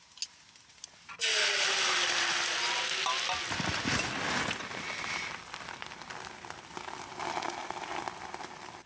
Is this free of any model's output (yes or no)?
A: yes